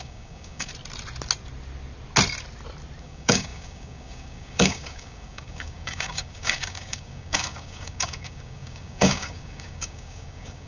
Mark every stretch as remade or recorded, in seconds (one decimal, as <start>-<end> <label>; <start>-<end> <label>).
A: 0.0-0.7 remade; 0.7-3.0 recorded; 3.0-10.7 remade